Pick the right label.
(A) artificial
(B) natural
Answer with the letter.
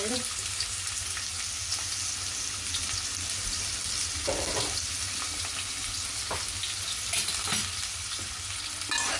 B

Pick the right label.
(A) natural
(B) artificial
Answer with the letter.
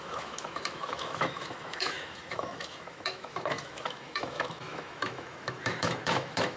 B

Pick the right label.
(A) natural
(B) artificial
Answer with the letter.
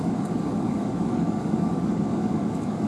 B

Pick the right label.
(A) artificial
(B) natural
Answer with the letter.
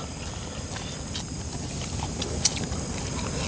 B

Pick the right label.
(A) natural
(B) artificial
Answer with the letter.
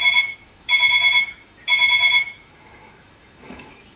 B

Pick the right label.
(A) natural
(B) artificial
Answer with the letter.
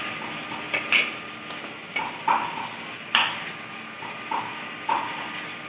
A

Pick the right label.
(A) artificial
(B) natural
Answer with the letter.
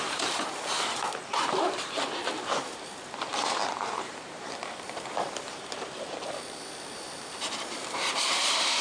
A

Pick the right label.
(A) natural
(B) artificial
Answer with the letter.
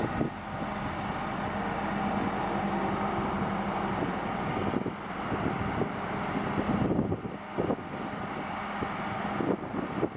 A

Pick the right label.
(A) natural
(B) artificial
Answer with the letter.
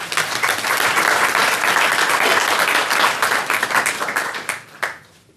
A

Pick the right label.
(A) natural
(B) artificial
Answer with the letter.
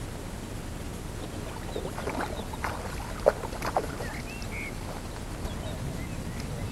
A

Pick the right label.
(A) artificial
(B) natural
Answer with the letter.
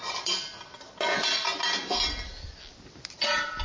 B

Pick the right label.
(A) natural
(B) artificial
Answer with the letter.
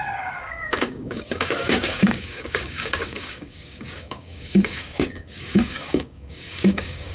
B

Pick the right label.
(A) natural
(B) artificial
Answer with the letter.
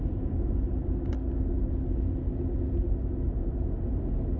A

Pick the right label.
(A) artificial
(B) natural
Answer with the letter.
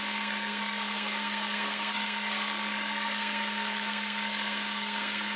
A